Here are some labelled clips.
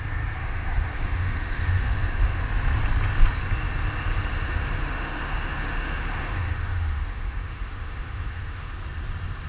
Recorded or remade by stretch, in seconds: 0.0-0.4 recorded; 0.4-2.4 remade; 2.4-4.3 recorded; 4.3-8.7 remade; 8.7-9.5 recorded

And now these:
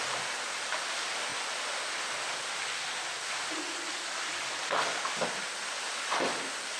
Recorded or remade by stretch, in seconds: 0.0-6.8 recorded

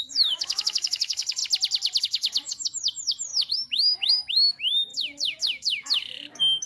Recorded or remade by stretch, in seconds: 0.0-1.4 remade; 1.4-2.0 recorded; 2.0-6.7 remade

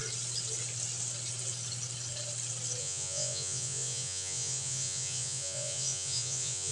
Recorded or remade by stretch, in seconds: 0.0-2.8 recorded; 2.8-6.7 remade

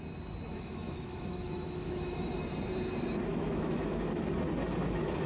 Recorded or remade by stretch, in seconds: 0.0-0.5 recorded; 0.5-2.3 remade; 2.3-3.3 recorded; 3.3-4.3 remade; 4.3-5.3 recorded

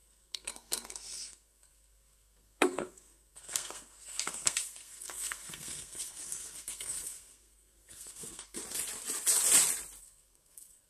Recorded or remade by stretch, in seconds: 0.0-8.6 remade; 8.6-10.0 recorded; 10.0-10.9 remade

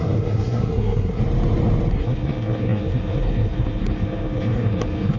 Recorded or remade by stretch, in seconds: 0.0-1.2 remade; 1.2-1.9 recorded; 1.9-5.2 remade

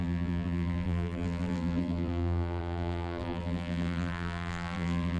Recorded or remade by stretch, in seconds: 0.0-5.2 remade